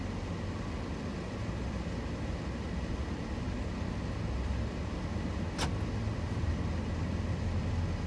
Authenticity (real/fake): real